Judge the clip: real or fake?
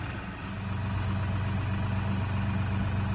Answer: real